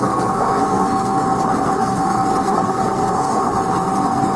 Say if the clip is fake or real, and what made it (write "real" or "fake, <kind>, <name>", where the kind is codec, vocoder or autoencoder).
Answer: fake, codec, SNAC